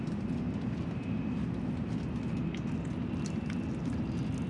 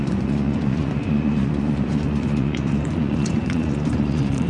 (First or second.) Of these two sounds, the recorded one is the first